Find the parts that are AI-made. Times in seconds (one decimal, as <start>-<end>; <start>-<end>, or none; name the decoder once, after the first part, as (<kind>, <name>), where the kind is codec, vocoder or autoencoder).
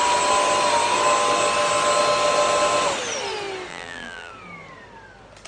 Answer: 3.7-4.3 (vocoder, BigVGAN v2)